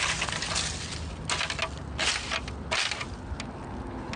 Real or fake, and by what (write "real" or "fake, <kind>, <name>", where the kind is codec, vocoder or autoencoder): real